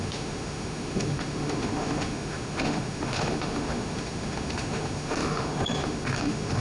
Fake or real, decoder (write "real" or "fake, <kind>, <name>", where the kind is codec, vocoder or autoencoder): fake, autoencoder, DAC-VAE